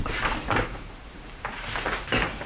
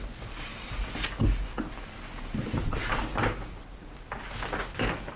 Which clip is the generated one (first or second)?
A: first